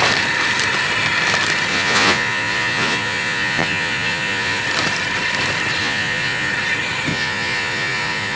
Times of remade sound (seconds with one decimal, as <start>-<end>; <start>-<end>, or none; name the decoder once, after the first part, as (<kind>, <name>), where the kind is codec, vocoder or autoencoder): 1.7-4.6 (vocoder, Vocos); 5.8-6.5; 7.1-8.4